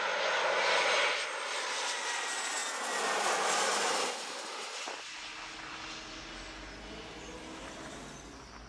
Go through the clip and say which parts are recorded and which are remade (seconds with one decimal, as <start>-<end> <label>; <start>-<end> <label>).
0.0-8.7 recorded

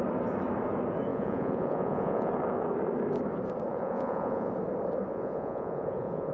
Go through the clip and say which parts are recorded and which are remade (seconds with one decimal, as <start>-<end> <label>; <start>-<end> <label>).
0.0-1.1 recorded; 1.1-2.3 remade; 2.3-3.7 recorded; 3.7-4.5 remade; 4.5-5.1 recorded; 5.1-6.3 remade

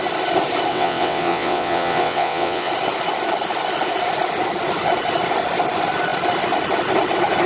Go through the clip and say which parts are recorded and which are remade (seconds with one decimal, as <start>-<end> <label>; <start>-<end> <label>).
0.0-0.7 recorded; 0.7-2.7 remade; 2.7-7.5 recorded

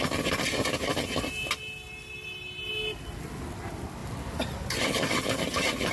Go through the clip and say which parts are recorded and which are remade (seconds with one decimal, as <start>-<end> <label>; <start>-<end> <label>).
0.0-5.9 recorded